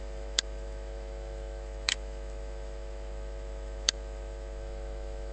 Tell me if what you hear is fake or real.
fake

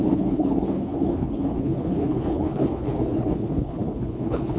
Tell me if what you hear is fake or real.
fake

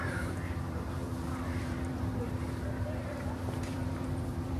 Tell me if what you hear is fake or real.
fake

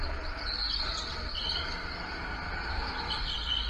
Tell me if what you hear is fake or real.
real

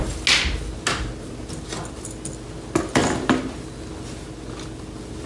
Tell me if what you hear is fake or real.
real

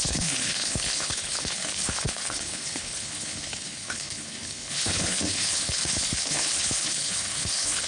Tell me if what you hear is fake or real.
fake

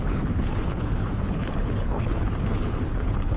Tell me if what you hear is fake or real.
fake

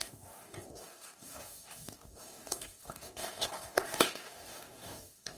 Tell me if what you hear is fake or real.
fake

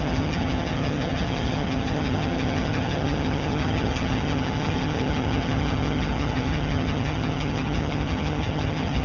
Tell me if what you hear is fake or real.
fake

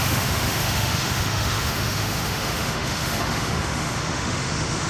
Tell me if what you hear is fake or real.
fake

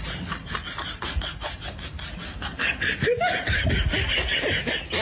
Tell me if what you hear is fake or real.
real